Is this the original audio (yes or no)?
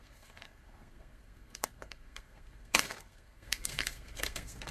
no